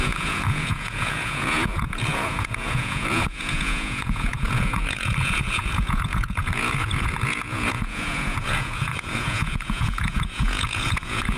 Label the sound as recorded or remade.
remade